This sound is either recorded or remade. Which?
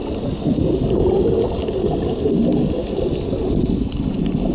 recorded